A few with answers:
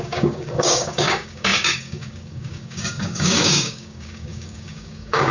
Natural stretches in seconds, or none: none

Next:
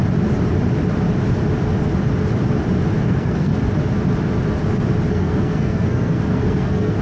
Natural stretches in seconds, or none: 0.0-3.0; 3.5-5.1

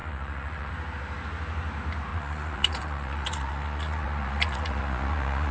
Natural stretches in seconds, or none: 0.7-2.1

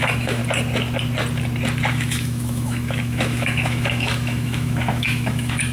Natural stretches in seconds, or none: 0.4-1.9

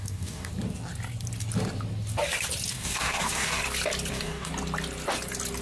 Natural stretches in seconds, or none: 0.5-2.7; 3.6-4.1; 4.5-5.6